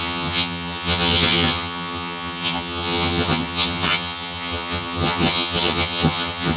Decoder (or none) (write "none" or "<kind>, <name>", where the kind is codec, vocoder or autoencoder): vocoder, HiFi-GAN